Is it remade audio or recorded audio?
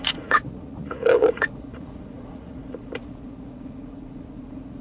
remade